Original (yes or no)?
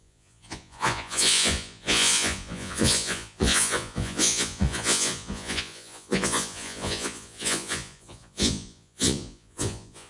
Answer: no